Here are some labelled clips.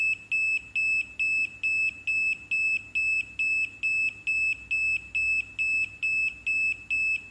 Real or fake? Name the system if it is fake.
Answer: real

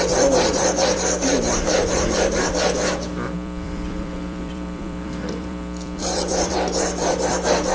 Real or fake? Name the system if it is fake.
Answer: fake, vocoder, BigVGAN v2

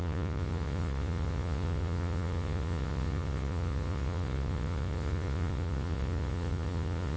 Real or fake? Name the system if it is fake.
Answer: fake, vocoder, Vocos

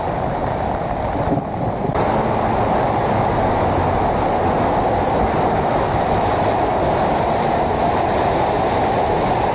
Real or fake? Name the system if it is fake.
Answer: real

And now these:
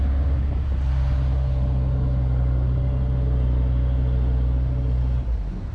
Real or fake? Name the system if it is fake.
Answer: real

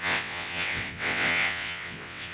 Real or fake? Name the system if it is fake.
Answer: fake, vocoder, WaveNeXt